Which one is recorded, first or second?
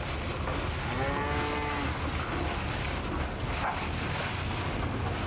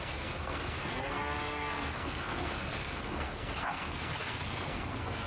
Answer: first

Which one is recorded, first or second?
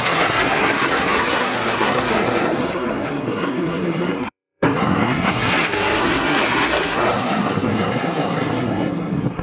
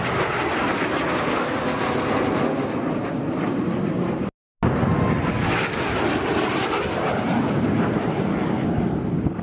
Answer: second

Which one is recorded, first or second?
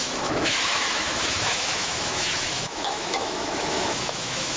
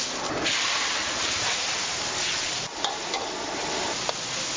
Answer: second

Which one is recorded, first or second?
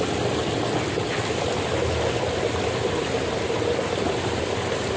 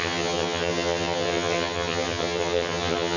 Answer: first